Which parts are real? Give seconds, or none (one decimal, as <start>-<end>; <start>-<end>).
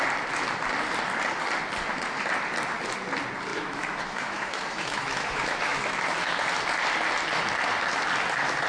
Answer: 0.0-3.5; 6.1-8.7